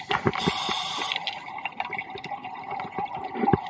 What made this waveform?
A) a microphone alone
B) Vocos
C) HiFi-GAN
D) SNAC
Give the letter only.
A